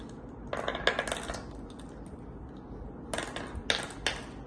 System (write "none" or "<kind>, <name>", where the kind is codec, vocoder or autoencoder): none